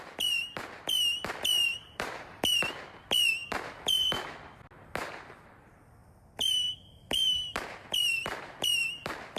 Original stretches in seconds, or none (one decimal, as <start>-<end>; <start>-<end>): 0.0-1.6; 2.6-9.4

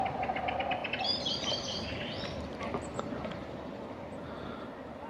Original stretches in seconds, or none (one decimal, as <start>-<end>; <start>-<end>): 0.0-0.8; 2.5-5.1

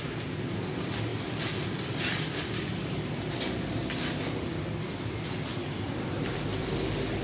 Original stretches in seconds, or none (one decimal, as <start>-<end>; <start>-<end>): 0.0-1.1; 5.1-7.2

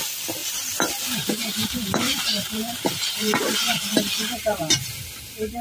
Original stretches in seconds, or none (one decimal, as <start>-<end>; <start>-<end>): 0.0-0.4; 0.9-1.6; 4.9-5.6